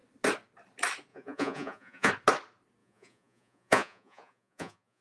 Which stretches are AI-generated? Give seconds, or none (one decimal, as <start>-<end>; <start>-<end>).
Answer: 1.1-2.1; 2.8-5.0